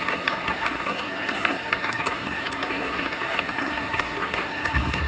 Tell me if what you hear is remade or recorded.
remade